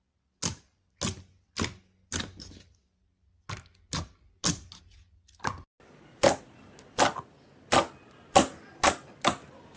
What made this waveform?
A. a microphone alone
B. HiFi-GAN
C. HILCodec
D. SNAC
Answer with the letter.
A